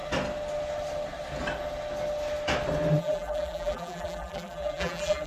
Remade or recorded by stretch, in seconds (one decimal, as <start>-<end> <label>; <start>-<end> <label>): 0.0-3.0 recorded; 3.0-5.3 remade